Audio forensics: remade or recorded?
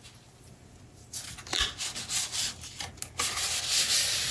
recorded